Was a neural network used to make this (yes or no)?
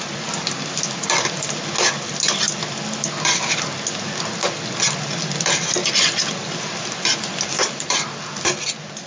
no